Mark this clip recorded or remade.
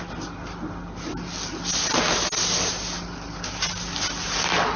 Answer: recorded